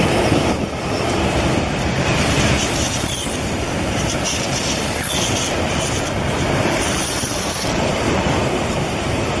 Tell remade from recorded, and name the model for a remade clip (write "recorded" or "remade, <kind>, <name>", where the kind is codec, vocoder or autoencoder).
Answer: remade, vocoder, BigVGAN v2